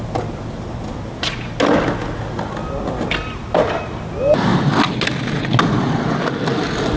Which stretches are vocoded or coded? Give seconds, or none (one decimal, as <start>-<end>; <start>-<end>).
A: none